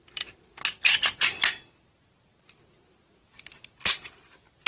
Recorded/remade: recorded